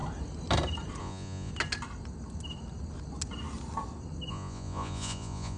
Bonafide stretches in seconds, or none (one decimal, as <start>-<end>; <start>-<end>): 0.0-1.0; 1.5-4.3